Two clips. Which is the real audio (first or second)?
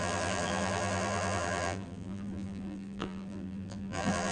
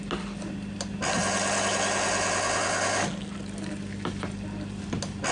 second